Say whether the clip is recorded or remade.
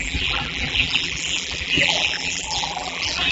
remade